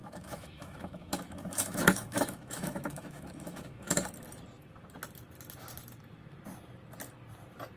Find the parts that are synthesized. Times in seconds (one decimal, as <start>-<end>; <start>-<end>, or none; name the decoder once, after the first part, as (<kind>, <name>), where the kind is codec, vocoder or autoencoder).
0.0-4.1 (autoencoder, DAC-VAE)